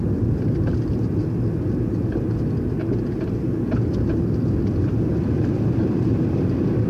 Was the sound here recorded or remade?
recorded